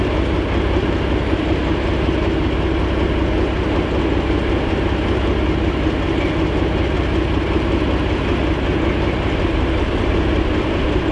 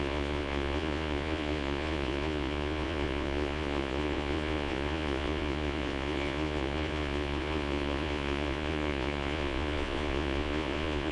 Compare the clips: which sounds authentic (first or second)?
first